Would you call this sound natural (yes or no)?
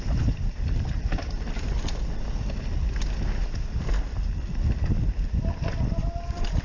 yes